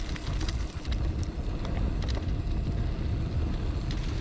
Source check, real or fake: real